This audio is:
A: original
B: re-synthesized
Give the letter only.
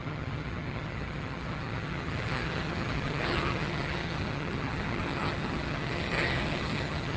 B